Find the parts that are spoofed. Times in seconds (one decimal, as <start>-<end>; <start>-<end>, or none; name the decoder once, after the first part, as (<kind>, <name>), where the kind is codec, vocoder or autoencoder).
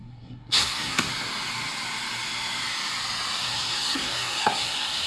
0.0-1.1 (codec, SNAC); 3.4-5.1